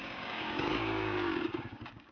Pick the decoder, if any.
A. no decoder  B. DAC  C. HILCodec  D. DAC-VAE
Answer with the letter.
B